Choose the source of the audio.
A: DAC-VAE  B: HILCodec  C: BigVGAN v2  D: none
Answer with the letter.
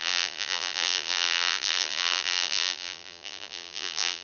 C